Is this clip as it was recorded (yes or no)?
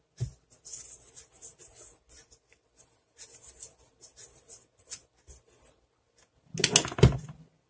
yes